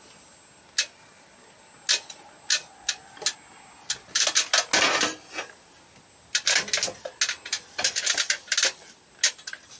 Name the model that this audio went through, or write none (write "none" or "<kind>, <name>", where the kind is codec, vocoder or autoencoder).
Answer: none